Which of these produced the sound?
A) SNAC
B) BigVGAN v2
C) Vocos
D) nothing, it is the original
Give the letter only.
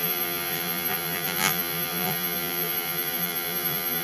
B